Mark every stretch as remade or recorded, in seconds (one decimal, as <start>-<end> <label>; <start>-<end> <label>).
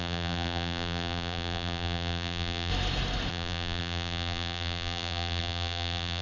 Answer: 0.0-2.7 remade; 2.7-3.3 recorded; 3.3-6.2 remade